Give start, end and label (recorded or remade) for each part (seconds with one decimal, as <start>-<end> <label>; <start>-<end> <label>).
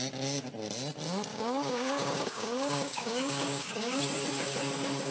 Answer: 0.0-1.3 recorded; 1.3-4.0 remade; 4.0-5.1 recorded